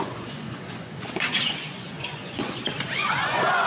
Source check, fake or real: fake